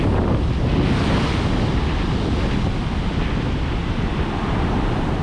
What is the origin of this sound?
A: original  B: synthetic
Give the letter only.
A